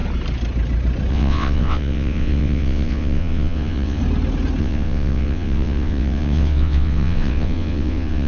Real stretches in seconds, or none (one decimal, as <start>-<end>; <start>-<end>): 0.0-1.1; 4.0-4.6

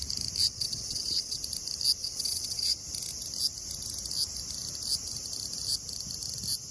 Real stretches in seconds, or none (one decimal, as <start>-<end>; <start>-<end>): 0.0-0.4; 1.4-2.0; 2.8-6.7

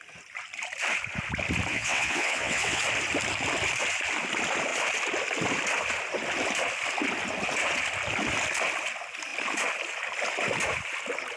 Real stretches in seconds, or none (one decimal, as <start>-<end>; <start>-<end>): 0.0-1.7; 2.8-11.4